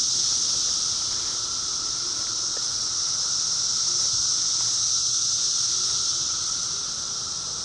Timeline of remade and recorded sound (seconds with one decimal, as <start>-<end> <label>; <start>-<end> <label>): 0.0-2.3 recorded; 2.3-3.2 remade; 3.2-6.1 recorded; 6.1-6.9 remade; 6.9-7.6 recorded